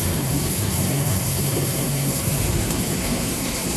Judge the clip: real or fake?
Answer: fake